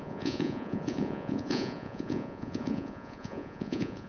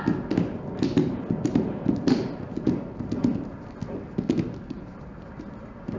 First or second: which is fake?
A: first